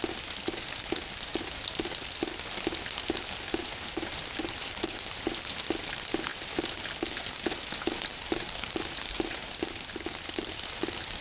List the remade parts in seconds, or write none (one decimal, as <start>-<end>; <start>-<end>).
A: 4.4-5.2; 8.1-9.4